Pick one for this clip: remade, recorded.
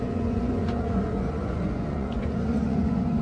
remade